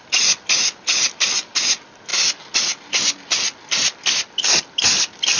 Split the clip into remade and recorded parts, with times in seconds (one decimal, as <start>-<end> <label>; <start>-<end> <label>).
0.0-2.1 recorded; 2.1-2.9 remade; 2.9-5.4 recorded